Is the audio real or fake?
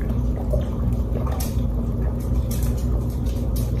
fake